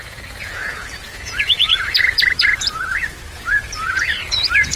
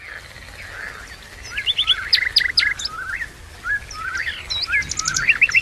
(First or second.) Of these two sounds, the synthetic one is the first